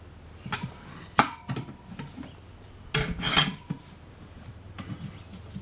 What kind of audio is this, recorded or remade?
recorded